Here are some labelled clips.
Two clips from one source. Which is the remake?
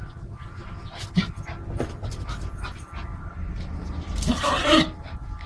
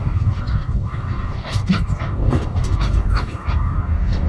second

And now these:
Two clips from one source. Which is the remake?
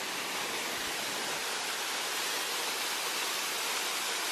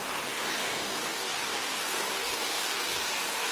second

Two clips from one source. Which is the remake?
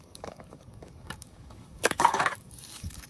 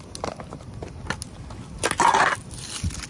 first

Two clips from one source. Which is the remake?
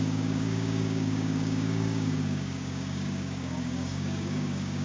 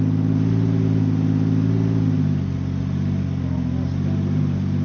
first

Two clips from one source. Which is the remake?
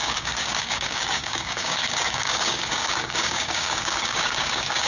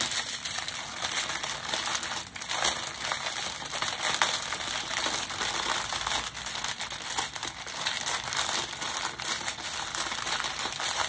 first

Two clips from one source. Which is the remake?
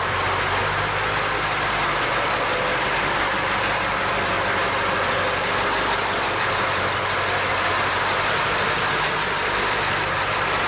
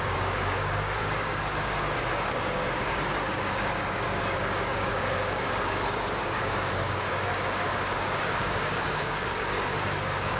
second